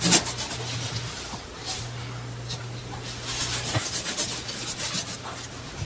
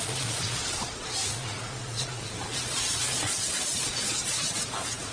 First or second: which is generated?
second